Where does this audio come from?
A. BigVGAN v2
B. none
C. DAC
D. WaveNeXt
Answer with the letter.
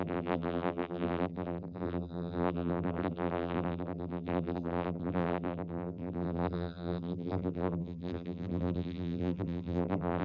A